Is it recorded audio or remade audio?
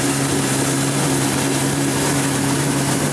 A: remade